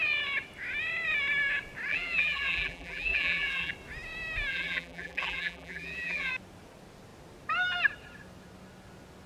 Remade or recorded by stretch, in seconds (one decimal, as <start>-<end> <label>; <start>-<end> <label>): 0.0-1.9 recorded; 1.9-3.7 remade; 3.7-4.5 recorded; 4.5-6.3 remade; 6.3-9.3 recorded